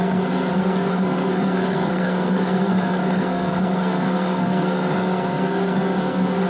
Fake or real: fake